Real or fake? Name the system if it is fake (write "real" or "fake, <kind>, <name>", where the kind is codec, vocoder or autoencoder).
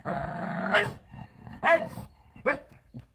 fake, codec, SNAC